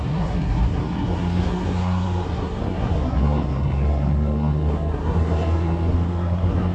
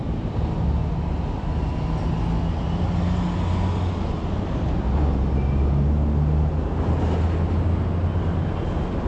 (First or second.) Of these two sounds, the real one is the second